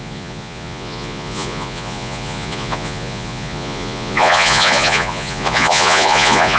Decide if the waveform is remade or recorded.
remade